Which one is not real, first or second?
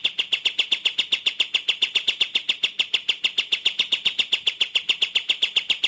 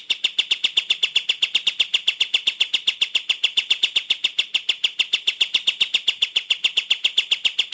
second